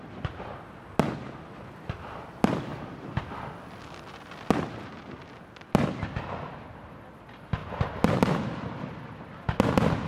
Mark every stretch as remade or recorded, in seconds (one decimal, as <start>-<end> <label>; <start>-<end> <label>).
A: 0.0-10.1 recorded